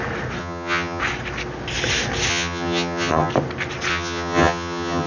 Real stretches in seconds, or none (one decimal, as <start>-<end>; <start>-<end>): 0.0-0.4; 1.0-2.3; 3.3-3.9